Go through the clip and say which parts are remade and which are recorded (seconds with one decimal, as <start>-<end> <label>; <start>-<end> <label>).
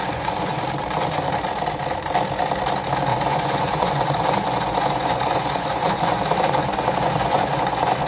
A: 0.0-0.6 remade; 0.6-3.1 recorded; 3.1-8.1 remade